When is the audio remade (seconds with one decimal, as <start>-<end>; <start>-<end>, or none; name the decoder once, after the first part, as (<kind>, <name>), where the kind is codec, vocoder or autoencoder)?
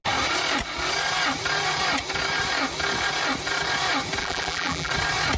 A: 4.2-4.9 (vocoder, BigVGAN v2)